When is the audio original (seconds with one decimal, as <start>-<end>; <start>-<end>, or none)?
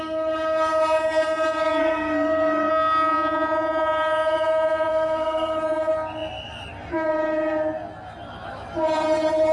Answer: 0.0-1.8; 2.7-4.9; 5.6-9.5